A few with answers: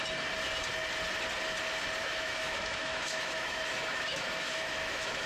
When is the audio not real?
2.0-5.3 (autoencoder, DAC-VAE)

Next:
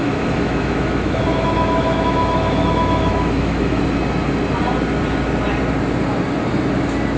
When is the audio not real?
0.0-3.8 (autoencoder, DAC-VAE)

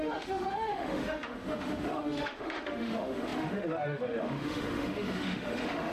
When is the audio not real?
0.0-5.9 (autoencoder, DAC-VAE)

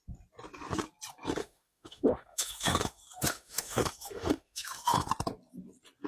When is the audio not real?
1.4-5.1 (autoencoder, DAC-VAE)